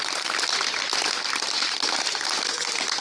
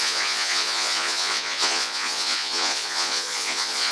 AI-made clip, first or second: second